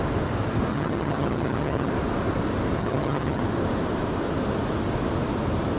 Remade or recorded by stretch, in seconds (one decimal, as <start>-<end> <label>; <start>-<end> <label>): 0.0-0.7 recorded; 0.7-1.9 remade; 1.9-2.8 recorded; 2.8-3.4 remade; 3.4-5.8 recorded